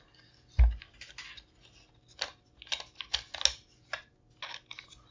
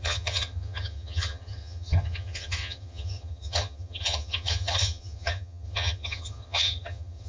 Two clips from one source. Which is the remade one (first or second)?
second